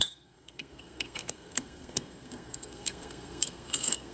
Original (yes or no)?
no